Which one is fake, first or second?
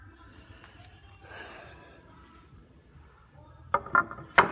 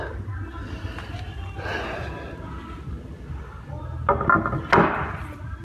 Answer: first